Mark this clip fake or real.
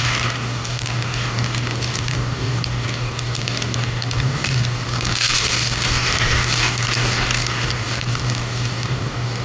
fake